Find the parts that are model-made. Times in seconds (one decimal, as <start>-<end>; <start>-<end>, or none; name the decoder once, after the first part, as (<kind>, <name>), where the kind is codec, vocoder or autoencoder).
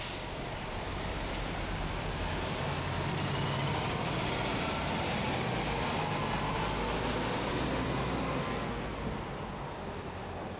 8.4-8.9 (codec, SNAC)